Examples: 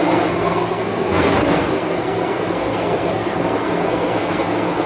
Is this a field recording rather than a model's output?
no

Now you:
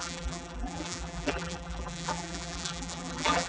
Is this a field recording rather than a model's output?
no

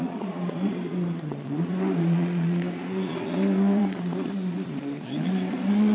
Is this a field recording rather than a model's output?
no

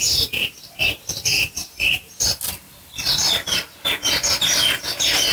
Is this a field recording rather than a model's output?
yes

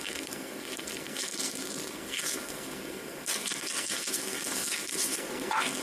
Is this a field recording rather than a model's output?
no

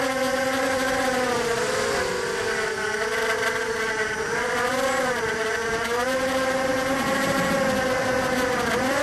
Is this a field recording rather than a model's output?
yes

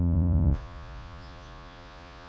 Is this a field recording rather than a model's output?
no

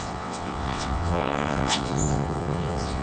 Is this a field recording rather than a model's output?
no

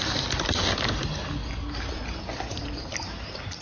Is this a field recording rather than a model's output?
yes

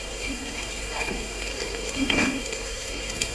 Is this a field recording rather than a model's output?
no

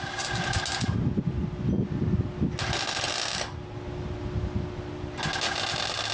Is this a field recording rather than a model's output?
yes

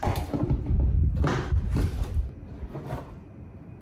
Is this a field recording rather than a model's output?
yes